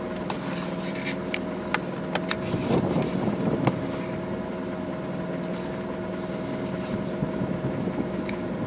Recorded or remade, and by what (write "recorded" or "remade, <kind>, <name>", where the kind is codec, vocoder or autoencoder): recorded